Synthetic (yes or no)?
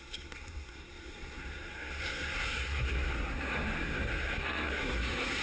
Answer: yes